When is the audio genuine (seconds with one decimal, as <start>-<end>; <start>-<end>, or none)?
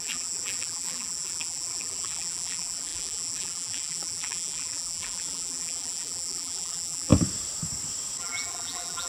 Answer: 7.1-8.2